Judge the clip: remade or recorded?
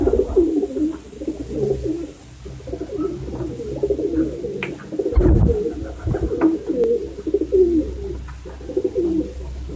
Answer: recorded